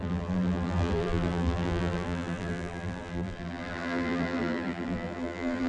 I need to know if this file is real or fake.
fake